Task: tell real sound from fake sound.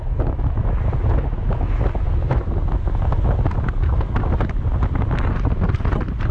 real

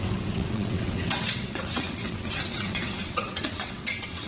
fake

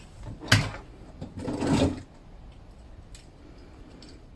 real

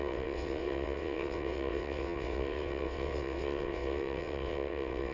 fake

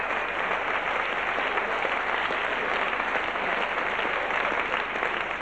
real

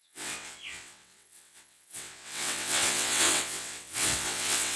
fake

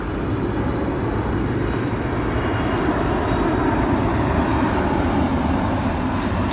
real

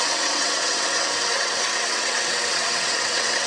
fake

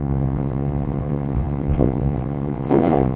fake